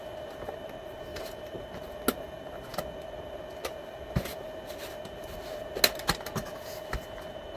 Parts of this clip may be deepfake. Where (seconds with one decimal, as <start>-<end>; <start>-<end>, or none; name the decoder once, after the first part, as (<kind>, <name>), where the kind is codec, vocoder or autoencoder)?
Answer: 1.1-1.7 (vocoder, BigVGAN v2)